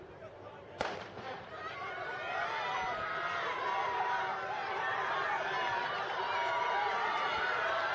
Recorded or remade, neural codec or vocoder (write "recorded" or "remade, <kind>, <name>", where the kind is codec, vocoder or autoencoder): remade, vocoder, BigVGAN v2